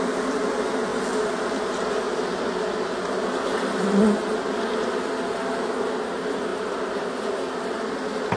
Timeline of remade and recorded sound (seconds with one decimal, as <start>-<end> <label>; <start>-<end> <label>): 0.0-8.4 recorded